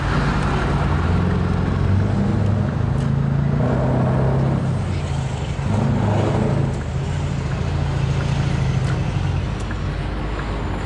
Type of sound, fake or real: real